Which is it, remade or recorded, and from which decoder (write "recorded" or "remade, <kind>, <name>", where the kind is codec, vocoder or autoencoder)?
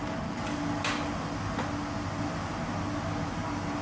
recorded